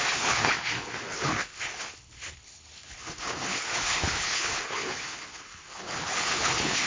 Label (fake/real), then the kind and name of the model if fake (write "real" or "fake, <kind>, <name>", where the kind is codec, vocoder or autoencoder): fake, codec, HILCodec